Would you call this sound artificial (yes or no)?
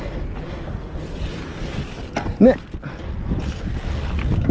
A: no